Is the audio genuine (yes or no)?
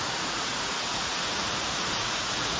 no